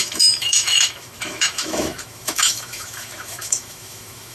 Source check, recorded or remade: remade